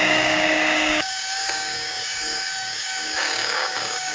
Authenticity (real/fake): fake